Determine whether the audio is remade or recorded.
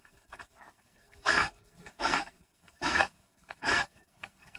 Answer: remade